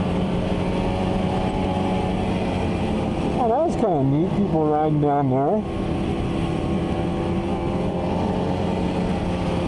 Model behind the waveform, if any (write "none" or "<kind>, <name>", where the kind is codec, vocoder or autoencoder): none